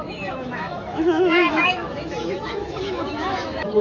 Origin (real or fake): fake